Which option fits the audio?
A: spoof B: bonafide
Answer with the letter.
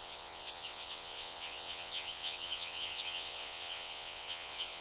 A